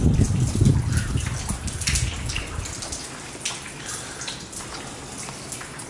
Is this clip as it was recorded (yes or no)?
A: yes